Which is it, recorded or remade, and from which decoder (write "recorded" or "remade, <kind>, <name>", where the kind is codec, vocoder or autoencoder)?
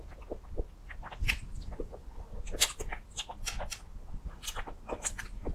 recorded